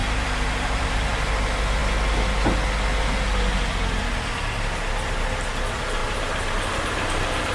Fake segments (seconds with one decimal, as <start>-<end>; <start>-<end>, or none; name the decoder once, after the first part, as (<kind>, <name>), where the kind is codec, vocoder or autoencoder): 0.0-1.1 (vocoder, BigVGAN v2); 6.0-7.5